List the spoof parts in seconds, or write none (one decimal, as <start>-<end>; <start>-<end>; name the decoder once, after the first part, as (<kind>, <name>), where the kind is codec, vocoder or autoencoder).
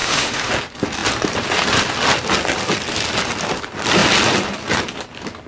0.0-0.5 (autoencoder, DAC-VAE)